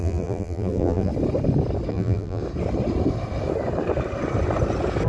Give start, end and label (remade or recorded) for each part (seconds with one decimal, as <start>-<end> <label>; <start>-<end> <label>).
0.0-1.1 remade; 1.1-1.9 recorded; 1.9-2.4 remade; 2.4-5.1 recorded